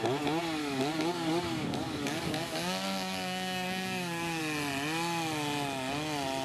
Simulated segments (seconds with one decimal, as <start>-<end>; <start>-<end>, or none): 0.6-4.4